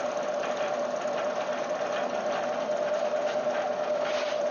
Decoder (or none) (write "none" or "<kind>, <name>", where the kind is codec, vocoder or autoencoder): none